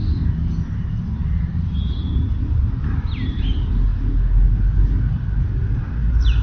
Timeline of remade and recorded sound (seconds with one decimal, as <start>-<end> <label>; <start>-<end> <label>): 0.0-1.5 recorded; 1.5-3.4 remade; 3.4-6.4 recorded